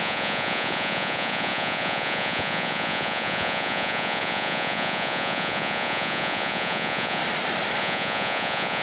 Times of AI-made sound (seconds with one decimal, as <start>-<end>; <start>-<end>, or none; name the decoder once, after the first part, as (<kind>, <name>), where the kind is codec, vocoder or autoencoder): 0.0-7.2 (vocoder, Vocos); 7.8-8.8